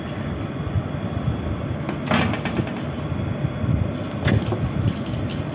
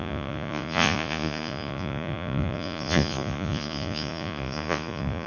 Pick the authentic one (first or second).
first